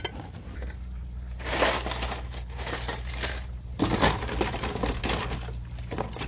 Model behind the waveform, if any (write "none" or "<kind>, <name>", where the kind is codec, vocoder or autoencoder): none